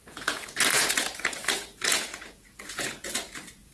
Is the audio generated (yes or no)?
yes